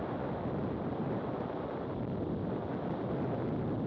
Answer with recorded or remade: recorded